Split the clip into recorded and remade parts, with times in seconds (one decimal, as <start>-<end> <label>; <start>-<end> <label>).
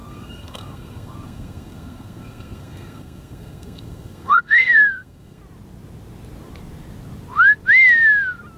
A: 0.0-5.4 remade; 5.4-8.6 recorded